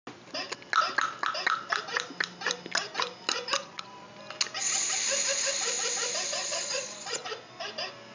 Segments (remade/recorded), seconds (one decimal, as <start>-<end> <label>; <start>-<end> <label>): 0.0-3.6 recorded; 3.6-4.1 remade; 4.1-6.4 recorded; 6.4-7.3 remade; 7.3-8.1 recorded